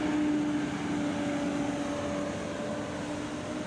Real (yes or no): yes